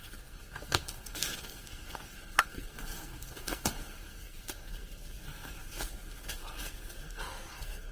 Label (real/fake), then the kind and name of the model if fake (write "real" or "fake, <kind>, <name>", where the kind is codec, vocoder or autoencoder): fake, codec, SNAC